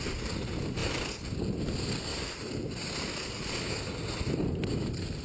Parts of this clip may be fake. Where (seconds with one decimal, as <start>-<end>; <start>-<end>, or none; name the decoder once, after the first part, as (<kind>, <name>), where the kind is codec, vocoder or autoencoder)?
none